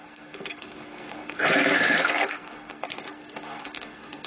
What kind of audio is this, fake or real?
fake